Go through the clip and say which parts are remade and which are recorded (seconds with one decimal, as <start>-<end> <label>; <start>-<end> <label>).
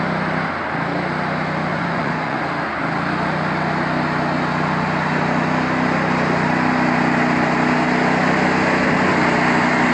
0.0-1.7 recorded; 1.7-2.4 remade; 2.4-9.9 recorded